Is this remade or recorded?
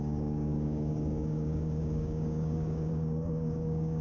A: remade